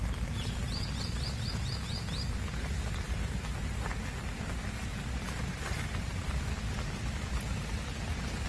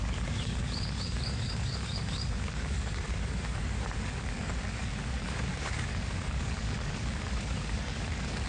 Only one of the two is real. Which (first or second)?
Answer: first